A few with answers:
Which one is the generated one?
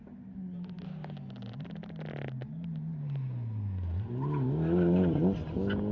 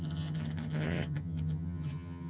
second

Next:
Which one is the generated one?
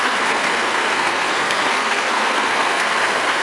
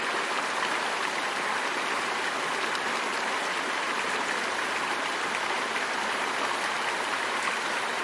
first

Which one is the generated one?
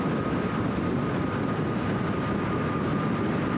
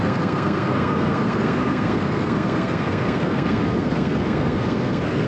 second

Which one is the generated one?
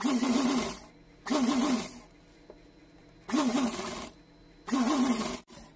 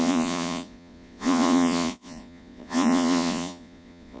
second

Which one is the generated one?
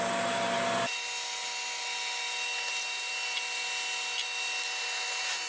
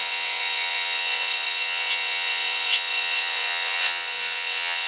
second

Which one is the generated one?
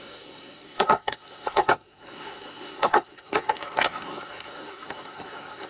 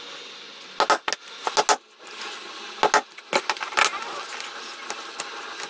first